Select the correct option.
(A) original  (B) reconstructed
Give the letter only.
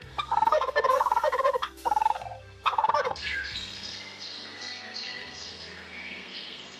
B